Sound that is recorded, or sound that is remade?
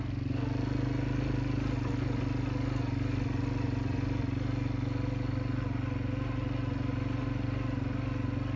recorded